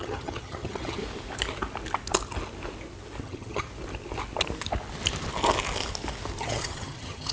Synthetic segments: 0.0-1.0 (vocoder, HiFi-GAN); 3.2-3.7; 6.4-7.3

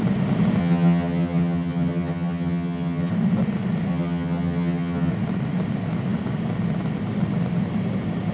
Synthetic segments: 0.6-3.1 (vocoder, HiFi-GAN); 3.9-5.1